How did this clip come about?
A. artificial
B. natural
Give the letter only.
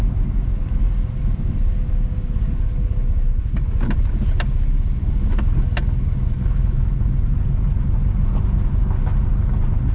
B